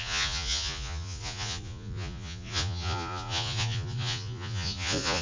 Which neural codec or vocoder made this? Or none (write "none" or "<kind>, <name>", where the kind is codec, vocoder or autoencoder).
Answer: vocoder, Vocos